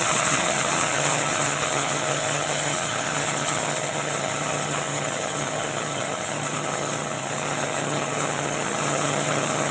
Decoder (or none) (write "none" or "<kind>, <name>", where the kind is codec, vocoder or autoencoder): vocoder, HiFi-GAN